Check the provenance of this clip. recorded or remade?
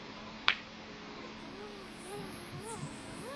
remade